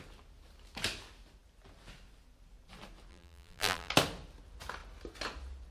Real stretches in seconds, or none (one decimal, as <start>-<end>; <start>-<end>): 0.0-3.1; 3.9-5.7